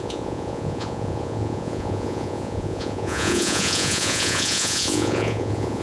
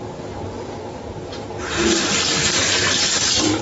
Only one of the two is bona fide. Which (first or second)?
second